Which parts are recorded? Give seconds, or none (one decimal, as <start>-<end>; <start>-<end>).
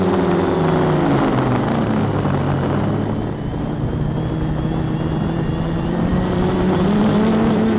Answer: 0.0-3.5; 4.0-7.8